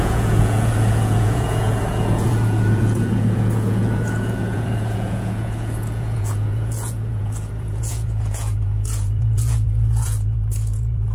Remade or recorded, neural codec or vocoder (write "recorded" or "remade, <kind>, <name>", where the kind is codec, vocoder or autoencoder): remade, vocoder, Vocos